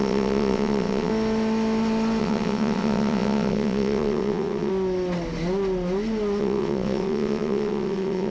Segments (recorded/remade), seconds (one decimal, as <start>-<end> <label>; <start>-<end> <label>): 0.0-1.1 remade; 1.1-2.2 recorded; 2.2-4.7 remade; 4.7-6.4 recorded; 6.4-8.3 remade